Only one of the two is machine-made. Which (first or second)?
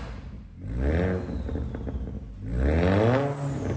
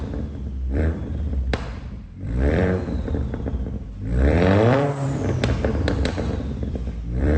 second